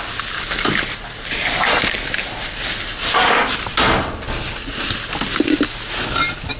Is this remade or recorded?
recorded